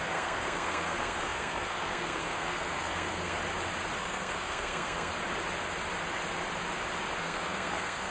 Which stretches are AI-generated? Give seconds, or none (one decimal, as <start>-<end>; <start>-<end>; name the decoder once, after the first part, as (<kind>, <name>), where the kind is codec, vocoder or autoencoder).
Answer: 0.0-3.4 (codec, SNAC); 4.0-5.1; 7.2-8.1